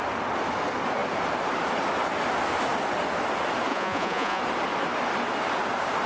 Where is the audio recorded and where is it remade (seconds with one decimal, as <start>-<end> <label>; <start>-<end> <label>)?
0.0-3.7 recorded; 3.7-4.4 remade; 4.4-6.1 recorded